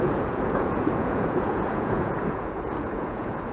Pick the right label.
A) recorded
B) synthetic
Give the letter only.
B